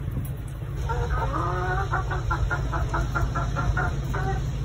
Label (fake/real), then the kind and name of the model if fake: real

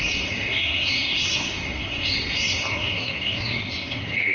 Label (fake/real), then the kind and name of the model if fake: fake, codec, SNAC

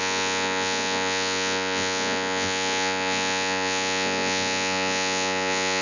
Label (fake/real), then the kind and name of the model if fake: fake, vocoder, Vocos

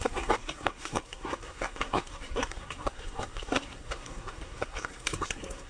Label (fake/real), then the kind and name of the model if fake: fake, codec, SNAC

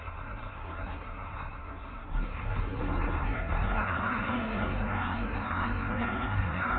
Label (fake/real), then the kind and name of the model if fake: fake, codec, SNAC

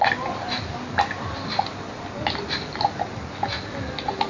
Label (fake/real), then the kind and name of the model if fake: real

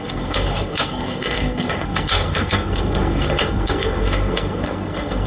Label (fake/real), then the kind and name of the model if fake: fake, codec, SNAC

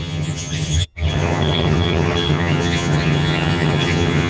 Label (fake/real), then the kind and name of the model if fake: fake, vocoder, HiFi-GAN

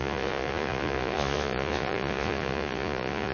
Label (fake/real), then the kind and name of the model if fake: fake, vocoder, Vocos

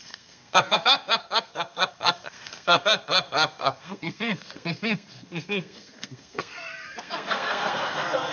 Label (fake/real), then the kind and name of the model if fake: fake, codec, SNAC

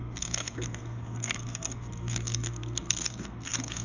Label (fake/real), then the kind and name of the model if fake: fake, codec, SNAC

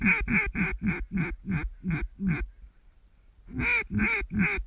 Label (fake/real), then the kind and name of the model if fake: real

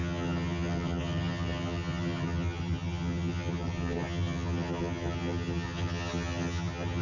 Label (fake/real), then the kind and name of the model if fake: fake, vocoder, HiFi-GAN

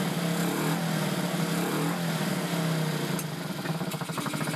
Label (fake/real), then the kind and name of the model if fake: real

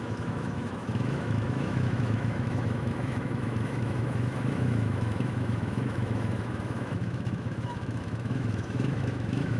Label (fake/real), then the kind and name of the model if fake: fake, autoencoder, DAC-VAE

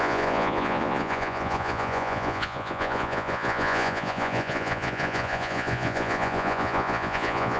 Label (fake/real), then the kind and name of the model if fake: fake, vocoder, Vocos